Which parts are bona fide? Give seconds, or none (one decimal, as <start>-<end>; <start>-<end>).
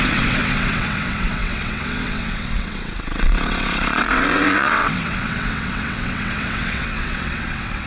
none